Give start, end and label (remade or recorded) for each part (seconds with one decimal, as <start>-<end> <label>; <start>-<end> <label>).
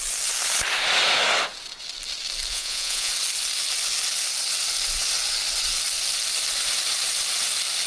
0.0-2.5 recorded; 2.5-3.1 remade; 3.1-7.9 recorded